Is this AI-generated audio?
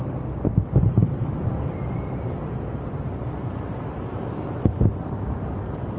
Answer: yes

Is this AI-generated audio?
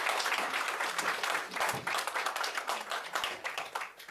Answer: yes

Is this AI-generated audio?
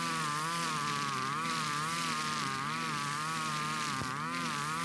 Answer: no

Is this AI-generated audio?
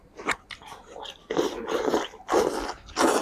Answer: yes